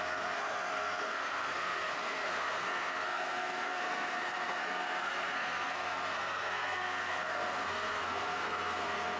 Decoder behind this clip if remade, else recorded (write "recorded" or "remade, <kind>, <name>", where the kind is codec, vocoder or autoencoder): remade, codec, SNAC